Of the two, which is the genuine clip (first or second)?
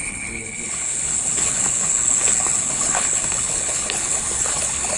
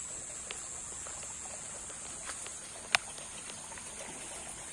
second